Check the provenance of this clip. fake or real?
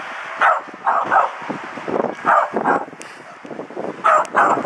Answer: real